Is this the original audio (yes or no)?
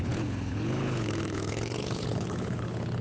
no